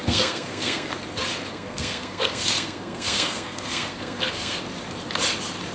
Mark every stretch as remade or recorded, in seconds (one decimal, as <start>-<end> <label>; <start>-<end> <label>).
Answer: 0.0-0.9 remade; 0.9-1.5 recorded; 1.5-4.6 remade; 4.6-5.7 recorded